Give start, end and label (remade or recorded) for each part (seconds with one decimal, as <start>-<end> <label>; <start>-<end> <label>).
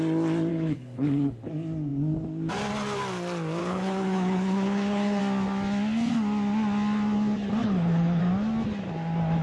0.0-0.5 recorded; 0.5-1.5 remade; 1.5-3.6 recorded; 3.6-5.2 remade; 5.2-7.6 recorded; 7.6-8.2 remade; 8.2-9.4 recorded